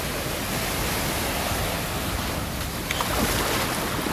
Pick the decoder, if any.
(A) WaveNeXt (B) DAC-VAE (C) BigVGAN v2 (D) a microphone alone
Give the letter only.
D